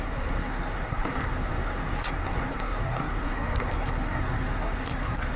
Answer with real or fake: fake